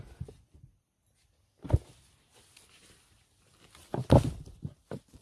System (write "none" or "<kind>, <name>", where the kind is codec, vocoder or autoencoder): none